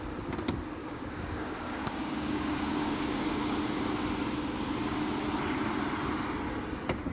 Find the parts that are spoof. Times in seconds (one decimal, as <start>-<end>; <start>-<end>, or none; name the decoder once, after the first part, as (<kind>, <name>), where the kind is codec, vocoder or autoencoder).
0.8-3.8 (codec, DAC)